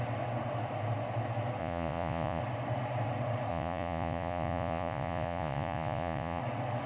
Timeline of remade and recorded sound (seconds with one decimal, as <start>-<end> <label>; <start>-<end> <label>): 0.0-1.6 recorded; 1.6-2.4 remade; 2.4-3.5 recorded; 3.5-6.4 remade; 6.4-6.9 recorded